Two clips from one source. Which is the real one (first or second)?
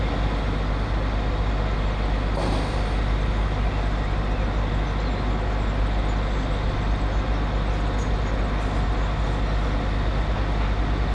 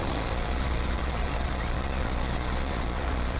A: first